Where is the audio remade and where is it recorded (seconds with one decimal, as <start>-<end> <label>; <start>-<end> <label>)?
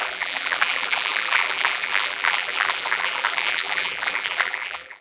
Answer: 0.0-5.0 remade